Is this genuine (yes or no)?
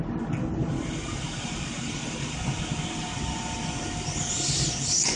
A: yes